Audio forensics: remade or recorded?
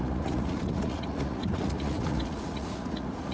remade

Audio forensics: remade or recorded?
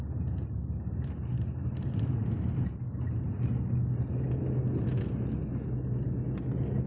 recorded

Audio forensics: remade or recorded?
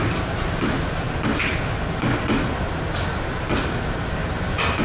recorded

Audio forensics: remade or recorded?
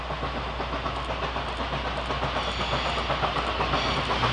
recorded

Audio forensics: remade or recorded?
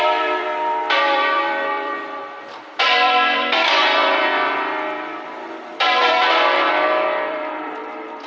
remade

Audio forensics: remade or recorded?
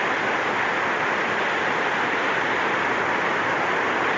recorded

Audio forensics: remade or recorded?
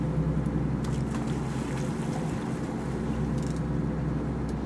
recorded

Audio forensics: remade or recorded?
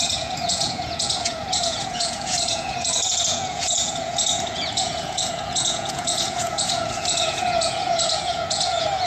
remade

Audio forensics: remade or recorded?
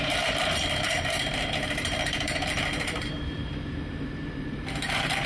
remade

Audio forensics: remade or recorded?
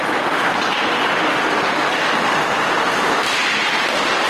recorded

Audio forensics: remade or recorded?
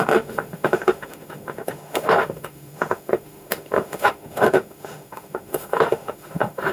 remade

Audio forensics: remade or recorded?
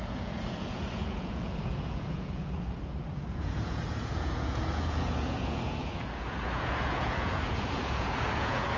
remade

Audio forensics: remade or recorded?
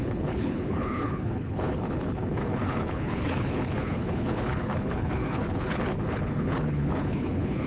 remade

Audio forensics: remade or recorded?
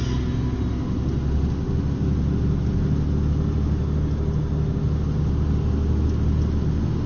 recorded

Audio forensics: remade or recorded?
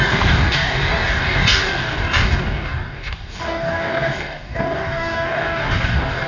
remade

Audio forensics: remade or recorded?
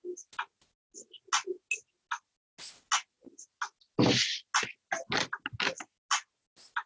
recorded